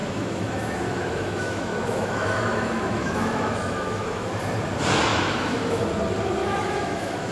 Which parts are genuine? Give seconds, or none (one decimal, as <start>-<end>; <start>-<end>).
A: 4.3-5.1; 5.8-6.4